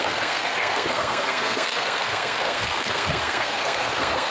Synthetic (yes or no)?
yes